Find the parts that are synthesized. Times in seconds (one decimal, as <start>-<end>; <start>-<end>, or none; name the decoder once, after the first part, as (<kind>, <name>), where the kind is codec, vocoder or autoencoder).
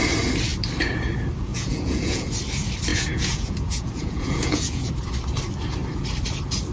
1.5-2.3 (vocoder, Vocos); 2.9-4.9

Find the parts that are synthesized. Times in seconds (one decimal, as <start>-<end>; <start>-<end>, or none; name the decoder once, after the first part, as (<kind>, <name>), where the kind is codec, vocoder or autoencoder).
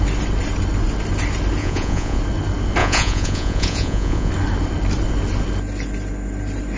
1.6-2.2 (vocoder, Vocos); 2.8-4.3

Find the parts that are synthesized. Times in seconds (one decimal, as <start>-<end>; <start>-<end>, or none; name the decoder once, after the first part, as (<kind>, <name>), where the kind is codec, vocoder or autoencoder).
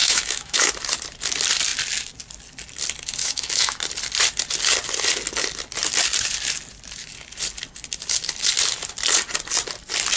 0.0-0.7 (autoencoder, DAC-VAE); 3.2-3.8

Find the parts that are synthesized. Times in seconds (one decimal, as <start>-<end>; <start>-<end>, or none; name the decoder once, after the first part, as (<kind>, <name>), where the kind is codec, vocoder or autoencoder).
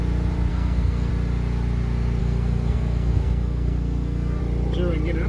0.5-1.1 (codec, SNAC); 2.2-4.4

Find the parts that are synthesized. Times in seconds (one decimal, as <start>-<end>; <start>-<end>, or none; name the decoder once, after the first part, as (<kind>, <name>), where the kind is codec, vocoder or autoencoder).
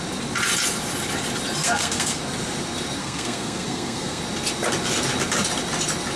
1.6-2.2 (codec, SNAC); 3.0-4.2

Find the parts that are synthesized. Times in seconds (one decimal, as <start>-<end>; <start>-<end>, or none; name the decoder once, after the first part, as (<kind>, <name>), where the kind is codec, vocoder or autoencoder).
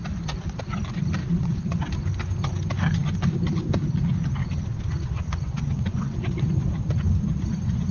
1.2-1.9 (vocoder, WaveNeXt); 4.4-6.5